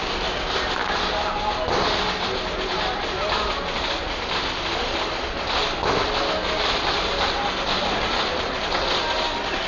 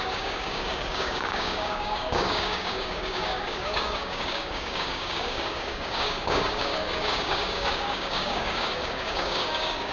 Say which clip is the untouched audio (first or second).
first